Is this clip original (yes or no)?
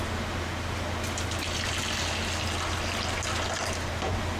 yes